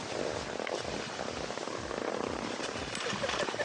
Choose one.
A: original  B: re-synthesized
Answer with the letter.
A